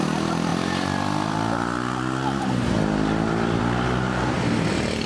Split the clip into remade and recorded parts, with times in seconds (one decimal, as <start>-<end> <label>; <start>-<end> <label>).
0.0-5.1 recorded